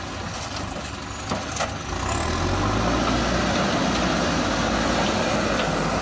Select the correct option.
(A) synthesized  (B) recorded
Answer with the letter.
B